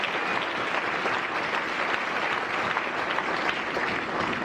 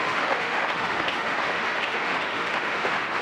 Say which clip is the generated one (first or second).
second